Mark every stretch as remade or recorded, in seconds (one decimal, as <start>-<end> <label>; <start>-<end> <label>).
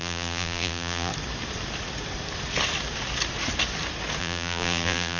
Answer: 0.0-1.1 remade; 1.1-4.2 recorded; 4.2-5.2 remade